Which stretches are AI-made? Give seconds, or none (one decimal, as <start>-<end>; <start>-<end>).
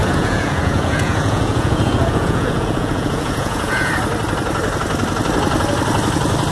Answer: 0.0-3.9